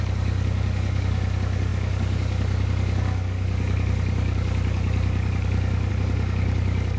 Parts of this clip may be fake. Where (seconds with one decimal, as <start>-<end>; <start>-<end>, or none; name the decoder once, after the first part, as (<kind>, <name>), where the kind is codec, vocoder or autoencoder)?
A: 0.0-7.0 (codec, DAC)